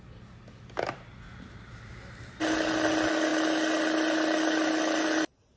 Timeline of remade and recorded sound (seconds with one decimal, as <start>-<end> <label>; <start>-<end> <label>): 0.0-5.6 recorded